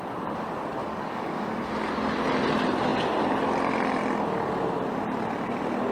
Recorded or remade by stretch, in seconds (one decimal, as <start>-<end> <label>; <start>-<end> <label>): 0.0-0.8 recorded; 0.8-1.7 remade; 1.7-5.9 recorded